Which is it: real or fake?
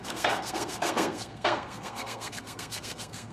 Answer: fake